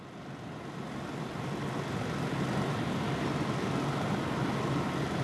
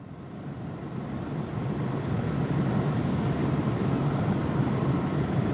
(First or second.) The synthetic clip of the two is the second